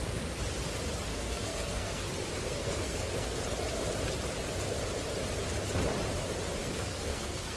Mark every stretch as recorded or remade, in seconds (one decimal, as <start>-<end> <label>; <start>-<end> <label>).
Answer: 0.0-1.1 recorded; 1.1-2.0 remade; 2.0-2.4 recorded; 2.4-3.4 remade; 3.4-6.6 recorded; 6.6-7.6 remade